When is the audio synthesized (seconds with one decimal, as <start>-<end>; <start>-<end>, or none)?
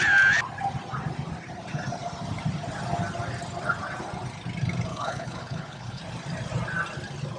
4.9-6.0